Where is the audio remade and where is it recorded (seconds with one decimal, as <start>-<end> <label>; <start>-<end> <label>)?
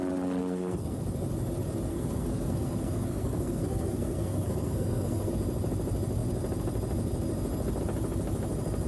0.0-0.4 recorded; 0.4-1.0 remade; 1.0-1.9 recorded; 1.9-5.3 remade; 5.3-8.9 recorded